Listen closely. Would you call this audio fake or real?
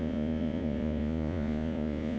fake